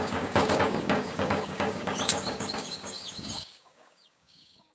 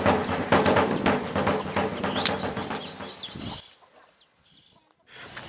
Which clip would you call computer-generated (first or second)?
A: first